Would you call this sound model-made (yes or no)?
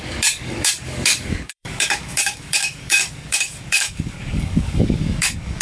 yes